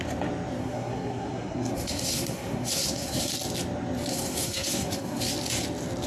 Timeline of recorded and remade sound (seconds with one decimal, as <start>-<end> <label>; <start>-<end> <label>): 0.0-0.6 recorded; 0.6-3.3 remade; 3.3-4.1 recorded; 4.1-5.2 remade; 5.2-6.1 recorded